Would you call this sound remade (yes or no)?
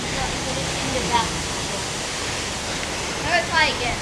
no